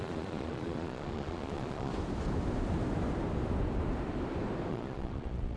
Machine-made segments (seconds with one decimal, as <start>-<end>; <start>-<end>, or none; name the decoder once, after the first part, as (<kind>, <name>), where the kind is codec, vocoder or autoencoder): 0.0-1.9 (vocoder, Vocos); 4.7-5.6